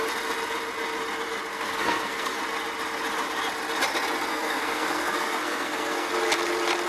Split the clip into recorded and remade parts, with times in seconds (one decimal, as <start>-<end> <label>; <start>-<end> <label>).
0.0-1.5 recorded; 1.5-2.4 remade; 2.4-4.3 recorded; 4.3-6.1 remade; 6.1-6.9 recorded